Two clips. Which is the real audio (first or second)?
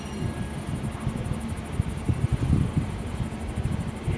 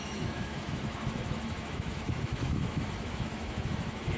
first